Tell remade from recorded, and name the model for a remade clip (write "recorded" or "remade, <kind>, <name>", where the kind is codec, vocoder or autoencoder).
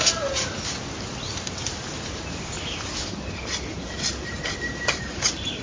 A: recorded